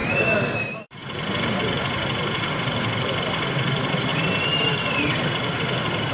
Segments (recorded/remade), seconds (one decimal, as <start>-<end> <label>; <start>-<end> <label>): 0.0-0.6 recorded; 0.6-1.0 remade; 1.0-2.6 recorded; 2.6-4.1 remade; 4.1-6.1 recorded

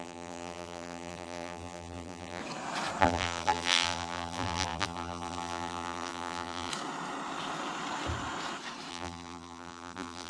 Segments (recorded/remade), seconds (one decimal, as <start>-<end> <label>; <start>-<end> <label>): 0.0-2.4 remade; 2.4-3.0 recorded; 3.0-6.7 remade; 6.7-8.9 recorded; 8.9-10.3 remade

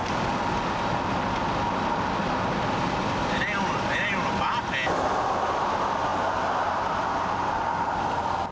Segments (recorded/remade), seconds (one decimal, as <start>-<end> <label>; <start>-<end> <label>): 0.0-8.5 recorded

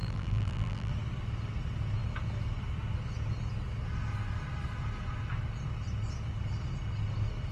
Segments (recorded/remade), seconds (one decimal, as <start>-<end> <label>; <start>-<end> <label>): 0.0-0.9 remade; 0.9-7.5 recorded